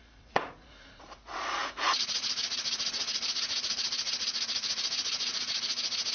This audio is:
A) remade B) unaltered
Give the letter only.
A